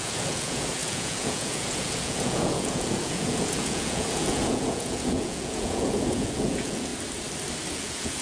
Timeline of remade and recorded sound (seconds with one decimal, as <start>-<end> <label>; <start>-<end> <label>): 0.0-6.9 remade; 6.9-7.7 recorded; 7.7-8.2 remade